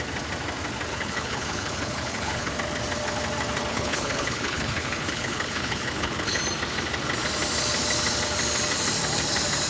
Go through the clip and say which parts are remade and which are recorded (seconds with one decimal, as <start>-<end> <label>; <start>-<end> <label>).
0.0-0.9 recorded; 0.9-2.5 remade; 2.5-3.7 recorded; 3.7-6.4 remade; 6.4-9.7 recorded